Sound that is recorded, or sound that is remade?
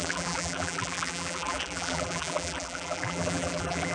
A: remade